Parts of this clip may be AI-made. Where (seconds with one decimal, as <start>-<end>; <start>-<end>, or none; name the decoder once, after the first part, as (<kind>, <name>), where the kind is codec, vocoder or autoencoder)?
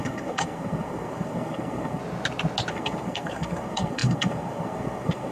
0.0-2.0 (codec, SNAC); 2.7-5.3